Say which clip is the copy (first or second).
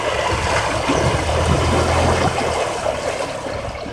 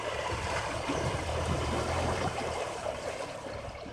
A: second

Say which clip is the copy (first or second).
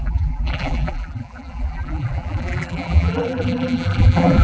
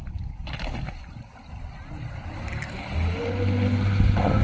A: first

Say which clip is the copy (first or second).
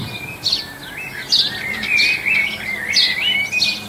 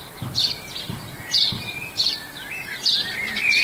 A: second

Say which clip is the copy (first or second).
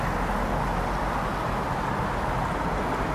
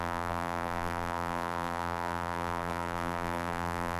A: second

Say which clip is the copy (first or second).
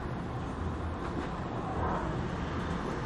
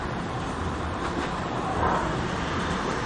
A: second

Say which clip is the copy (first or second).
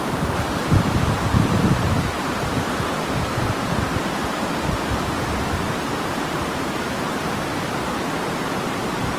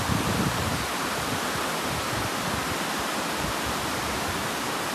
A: first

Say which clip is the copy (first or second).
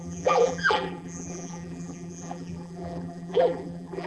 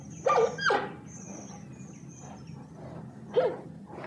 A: first